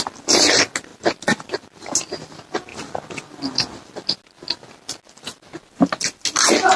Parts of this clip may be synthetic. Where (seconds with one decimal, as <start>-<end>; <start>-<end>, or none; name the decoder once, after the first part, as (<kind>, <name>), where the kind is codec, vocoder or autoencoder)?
none